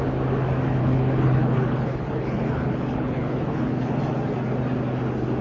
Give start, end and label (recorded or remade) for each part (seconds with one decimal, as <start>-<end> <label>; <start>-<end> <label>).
0.0-0.8 recorded; 0.8-4.0 remade; 4.0-5.4 recorded